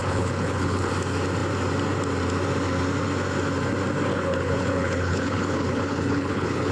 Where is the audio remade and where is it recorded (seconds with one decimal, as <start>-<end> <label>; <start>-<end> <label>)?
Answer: 0.0-0.9 remade; 0.9-4.1 recorded; 4.1-6.7 remade